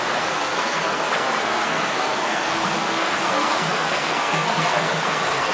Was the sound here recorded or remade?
remade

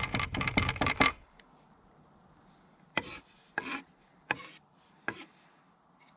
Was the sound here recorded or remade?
recorded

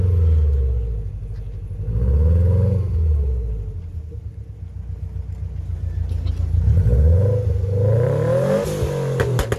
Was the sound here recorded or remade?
recorded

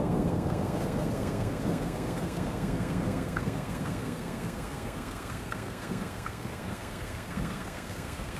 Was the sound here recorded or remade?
remade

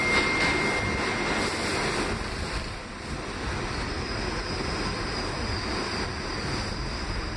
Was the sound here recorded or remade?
recorded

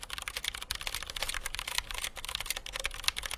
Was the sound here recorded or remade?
recorded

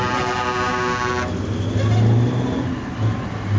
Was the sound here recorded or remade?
recorded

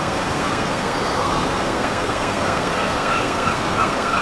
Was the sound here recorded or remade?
remade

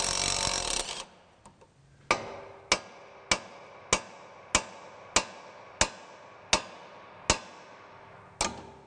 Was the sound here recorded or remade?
recorded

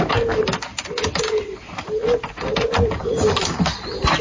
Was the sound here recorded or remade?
recorded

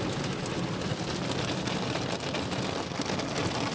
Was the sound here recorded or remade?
recorded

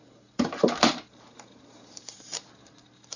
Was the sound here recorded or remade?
remade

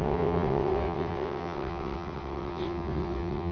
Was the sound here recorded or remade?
remade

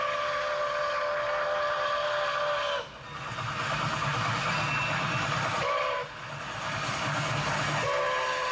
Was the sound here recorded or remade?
recorded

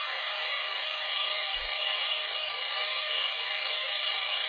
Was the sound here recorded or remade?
remade